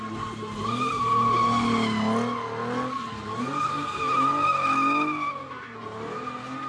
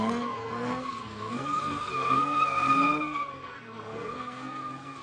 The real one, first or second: first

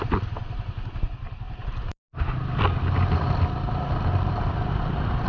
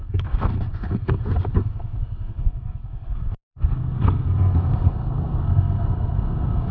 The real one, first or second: first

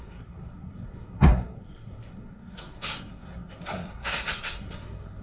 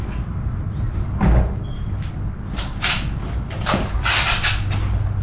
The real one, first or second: second